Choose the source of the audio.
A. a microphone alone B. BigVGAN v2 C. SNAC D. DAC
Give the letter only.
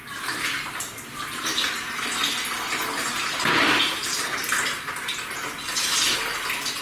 A